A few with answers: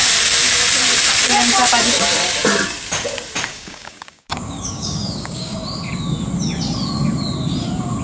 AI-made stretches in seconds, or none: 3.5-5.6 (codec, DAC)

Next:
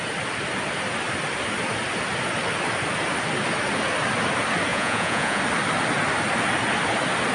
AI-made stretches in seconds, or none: 4.7-5.4 (vocoder, Vocos)